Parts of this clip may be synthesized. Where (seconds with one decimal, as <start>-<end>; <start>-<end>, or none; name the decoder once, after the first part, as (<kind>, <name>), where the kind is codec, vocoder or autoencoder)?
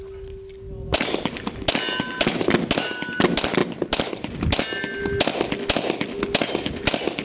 none